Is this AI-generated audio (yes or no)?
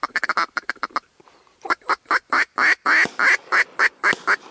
no